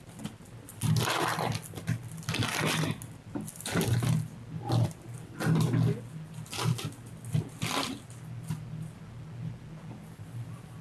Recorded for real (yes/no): yes